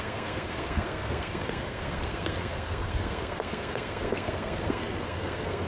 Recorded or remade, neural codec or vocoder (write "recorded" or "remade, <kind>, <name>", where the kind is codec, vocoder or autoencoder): remade, codec, SNAC